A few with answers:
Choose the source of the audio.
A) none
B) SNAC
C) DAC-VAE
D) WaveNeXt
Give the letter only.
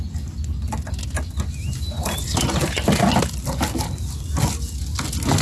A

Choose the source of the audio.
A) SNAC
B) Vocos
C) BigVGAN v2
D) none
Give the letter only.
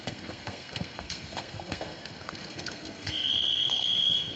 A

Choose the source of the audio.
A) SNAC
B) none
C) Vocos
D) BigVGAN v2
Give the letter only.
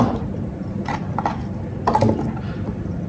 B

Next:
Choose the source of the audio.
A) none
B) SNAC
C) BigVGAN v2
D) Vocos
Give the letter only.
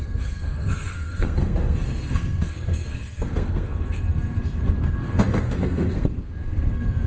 B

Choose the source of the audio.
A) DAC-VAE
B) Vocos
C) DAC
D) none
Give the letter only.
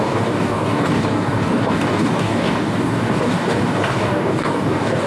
C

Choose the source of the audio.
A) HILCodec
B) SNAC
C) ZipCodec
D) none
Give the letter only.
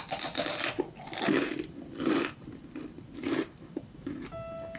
D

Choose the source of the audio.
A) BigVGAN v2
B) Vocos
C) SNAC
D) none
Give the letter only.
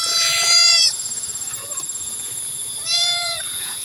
B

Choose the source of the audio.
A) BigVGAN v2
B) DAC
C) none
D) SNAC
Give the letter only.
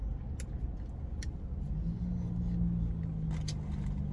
C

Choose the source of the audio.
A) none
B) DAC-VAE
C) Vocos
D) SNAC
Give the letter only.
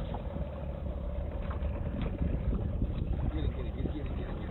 A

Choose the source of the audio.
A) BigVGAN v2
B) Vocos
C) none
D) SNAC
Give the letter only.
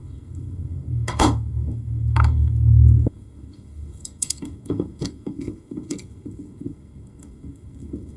D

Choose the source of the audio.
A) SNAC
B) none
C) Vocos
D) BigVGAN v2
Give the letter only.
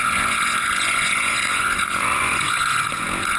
C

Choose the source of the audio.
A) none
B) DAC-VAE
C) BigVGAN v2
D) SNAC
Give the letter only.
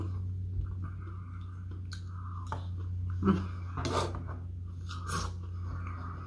A